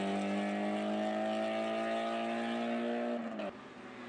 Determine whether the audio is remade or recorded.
recorded